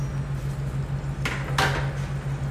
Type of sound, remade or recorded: recorded